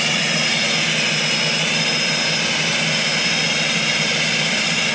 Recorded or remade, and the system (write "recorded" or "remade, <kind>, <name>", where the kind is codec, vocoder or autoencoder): recorded